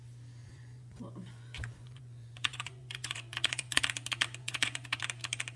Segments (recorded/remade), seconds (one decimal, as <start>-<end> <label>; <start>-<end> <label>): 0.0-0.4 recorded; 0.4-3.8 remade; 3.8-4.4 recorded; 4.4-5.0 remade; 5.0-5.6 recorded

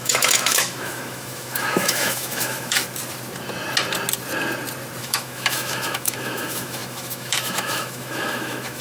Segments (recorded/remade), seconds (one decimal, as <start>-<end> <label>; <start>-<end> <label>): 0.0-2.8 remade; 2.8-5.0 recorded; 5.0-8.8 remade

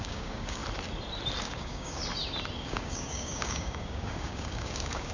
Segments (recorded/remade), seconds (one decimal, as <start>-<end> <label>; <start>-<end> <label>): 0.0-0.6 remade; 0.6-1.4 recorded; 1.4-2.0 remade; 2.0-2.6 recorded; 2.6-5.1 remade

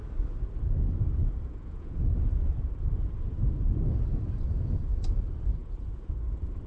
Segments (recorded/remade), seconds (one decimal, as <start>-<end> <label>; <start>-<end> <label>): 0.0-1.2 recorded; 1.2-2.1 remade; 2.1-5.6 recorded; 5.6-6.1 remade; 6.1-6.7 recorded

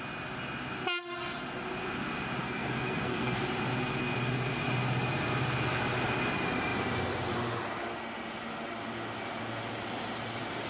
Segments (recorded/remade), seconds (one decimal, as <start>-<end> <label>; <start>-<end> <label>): 0.0-2.4 recorded; 2.4-3.4 remade; 3.4-10.7 recorded